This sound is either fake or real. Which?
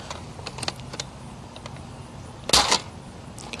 real